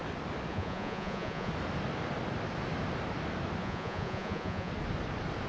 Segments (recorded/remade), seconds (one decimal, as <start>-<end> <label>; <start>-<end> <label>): 0.0-0.5 recorded; 0.5-1.5 remade; 1.5-3.6 recorded; 3.6-4.7 remade; 4.7-5.5 recorded